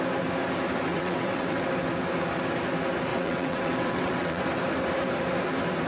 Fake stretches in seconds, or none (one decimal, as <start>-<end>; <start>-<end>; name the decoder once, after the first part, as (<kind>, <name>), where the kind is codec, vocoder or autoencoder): 0.9-1.6 (vocoder, WaveNeXt); 3.1-4.4